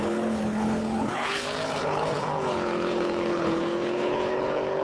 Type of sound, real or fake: fake